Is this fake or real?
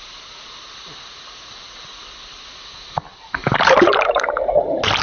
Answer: real